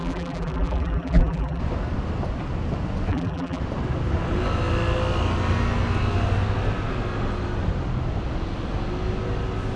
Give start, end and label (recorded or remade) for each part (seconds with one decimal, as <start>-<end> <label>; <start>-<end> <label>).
0.0-1.6 remade; 1.6-3.1 recorded; 3.1-3.6 remade; 3.6-9.8 recorded